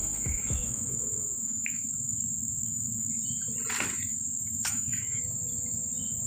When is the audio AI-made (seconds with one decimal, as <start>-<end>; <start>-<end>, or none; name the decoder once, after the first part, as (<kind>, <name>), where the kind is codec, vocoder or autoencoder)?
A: 0.0-3.1 (autoencoder, DAC-VAE); 4.1-5.2